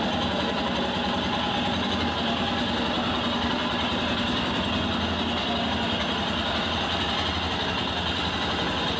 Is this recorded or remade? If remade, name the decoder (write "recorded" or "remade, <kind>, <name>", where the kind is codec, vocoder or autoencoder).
recorded